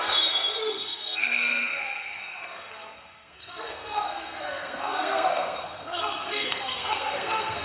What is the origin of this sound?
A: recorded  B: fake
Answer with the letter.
B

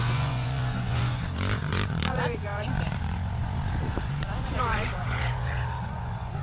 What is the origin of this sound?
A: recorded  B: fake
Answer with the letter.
B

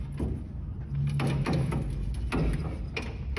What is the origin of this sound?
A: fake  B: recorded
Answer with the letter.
B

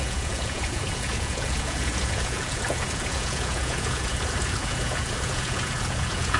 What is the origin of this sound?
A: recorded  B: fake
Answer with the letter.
B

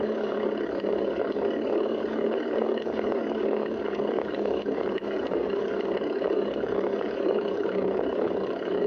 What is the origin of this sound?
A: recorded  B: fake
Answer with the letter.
B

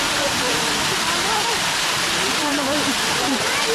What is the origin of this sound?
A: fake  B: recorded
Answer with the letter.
A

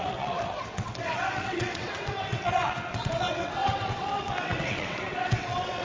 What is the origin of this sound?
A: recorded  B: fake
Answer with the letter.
B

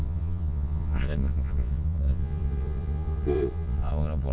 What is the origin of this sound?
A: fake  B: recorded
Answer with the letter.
A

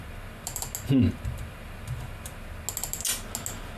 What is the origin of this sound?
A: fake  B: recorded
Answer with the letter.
B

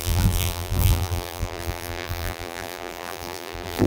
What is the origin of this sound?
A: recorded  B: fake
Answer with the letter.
B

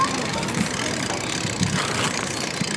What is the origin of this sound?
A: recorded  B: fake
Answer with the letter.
A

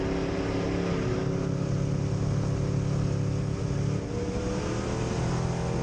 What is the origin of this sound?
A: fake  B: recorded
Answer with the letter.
B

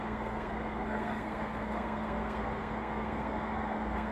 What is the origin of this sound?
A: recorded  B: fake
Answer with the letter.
B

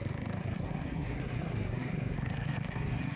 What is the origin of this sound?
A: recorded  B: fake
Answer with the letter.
B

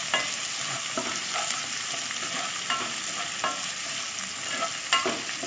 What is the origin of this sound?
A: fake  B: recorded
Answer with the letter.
B